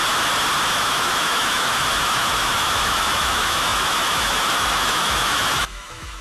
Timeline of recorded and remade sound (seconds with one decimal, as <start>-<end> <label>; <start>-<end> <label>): 0.0-0.8 recorded; 0.8-6.2 remade